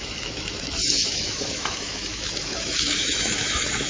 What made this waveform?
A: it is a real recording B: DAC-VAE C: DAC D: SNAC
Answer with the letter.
B